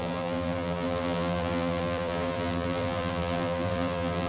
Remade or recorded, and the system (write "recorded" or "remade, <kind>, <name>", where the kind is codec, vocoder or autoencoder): remade, vocoder, BigVGAN v2